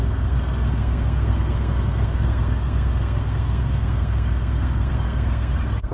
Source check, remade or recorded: remade